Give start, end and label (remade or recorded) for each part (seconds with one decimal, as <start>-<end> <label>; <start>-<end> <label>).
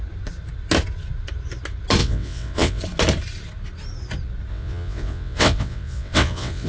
0.0-2.0 recorded; 2.0-2.8 remade; 2.8-4.5 recorded; 4.5-6.7 remade